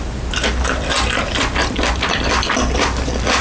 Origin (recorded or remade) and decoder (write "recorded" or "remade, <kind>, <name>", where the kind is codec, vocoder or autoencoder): recorded